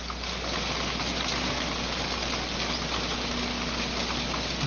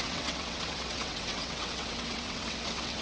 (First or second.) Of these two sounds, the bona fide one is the first